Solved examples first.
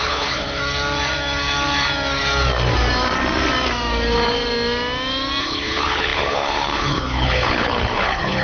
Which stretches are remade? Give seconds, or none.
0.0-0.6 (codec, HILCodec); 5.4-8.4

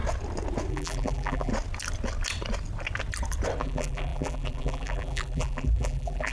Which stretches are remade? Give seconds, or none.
0.7-1.5 (vocoder, BigVGAN v2); 3.6-6.3

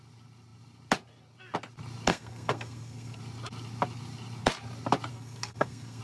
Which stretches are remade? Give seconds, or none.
2.1-3.2 (codec, SNAC); 5.1-6.0

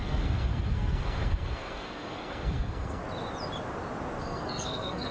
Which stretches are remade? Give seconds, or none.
0.0-3.0 (codec, SNAC); 4.2-5.1

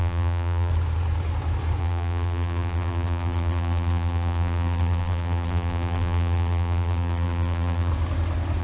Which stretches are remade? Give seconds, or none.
0.0-0.7 (vocoder, BigVGAN v2); 1.8-7.9

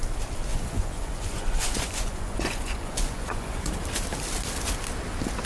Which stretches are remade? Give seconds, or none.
0.5-3.7 (vocoder, Vocos)

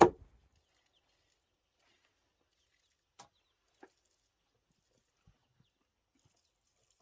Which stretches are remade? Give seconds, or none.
none